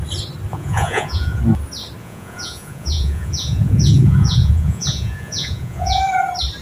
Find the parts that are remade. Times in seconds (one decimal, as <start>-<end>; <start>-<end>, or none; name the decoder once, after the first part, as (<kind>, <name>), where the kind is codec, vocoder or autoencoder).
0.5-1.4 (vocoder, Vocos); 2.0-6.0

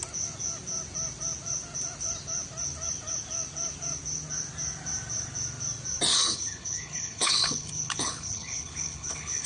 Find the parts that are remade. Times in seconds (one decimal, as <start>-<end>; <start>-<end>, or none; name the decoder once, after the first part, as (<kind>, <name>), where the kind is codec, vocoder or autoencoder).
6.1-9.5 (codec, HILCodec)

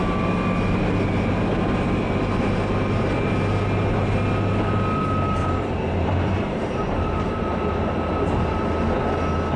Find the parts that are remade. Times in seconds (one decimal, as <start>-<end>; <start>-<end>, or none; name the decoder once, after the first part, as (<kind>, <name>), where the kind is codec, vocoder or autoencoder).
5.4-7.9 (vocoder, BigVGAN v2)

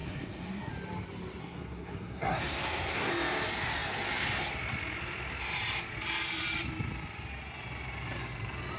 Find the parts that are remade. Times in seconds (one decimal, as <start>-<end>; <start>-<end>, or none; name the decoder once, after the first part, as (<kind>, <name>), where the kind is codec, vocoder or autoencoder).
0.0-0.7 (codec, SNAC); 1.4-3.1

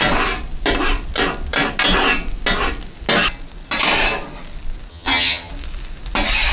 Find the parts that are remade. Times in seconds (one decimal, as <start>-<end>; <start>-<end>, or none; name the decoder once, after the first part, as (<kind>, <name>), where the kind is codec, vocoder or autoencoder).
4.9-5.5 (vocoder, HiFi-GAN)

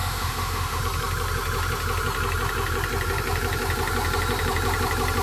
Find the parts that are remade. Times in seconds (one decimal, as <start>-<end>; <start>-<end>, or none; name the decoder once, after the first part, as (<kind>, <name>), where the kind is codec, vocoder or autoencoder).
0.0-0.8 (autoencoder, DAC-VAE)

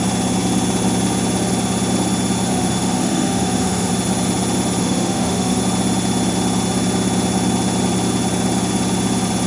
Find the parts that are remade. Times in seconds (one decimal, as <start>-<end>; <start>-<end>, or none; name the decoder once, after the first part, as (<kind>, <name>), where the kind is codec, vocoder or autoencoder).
2.5-3.9 (autoencoder, DAC-VAE); 4.8-5.6